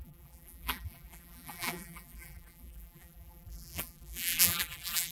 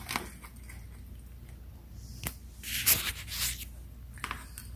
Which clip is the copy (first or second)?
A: first